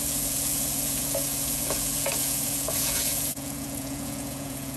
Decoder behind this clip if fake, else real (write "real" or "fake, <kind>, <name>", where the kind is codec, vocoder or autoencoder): fake, vocoder, Vocos